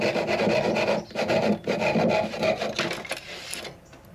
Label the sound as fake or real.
real